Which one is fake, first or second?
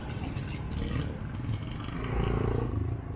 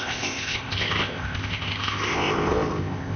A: second